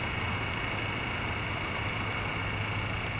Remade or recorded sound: recorded